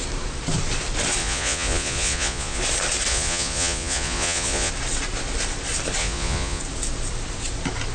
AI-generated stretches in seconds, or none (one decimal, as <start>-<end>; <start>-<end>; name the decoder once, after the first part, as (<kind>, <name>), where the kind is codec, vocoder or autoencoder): 1.2-2.6 (vocoder, Vocos); 3.1-4.7; 6.0-6.6